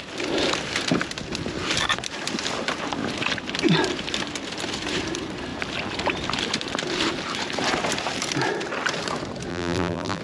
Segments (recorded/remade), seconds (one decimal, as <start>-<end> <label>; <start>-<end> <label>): 0.0-9.5 recorded; 9.5-10.2 remade